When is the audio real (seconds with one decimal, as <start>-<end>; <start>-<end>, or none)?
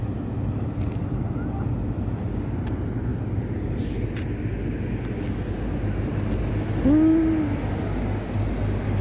0.0-9.0